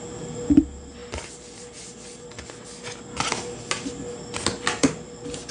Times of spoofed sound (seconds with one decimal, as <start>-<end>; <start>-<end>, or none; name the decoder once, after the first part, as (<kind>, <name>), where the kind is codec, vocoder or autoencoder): none